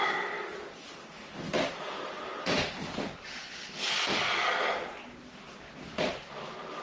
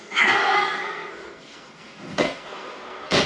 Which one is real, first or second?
first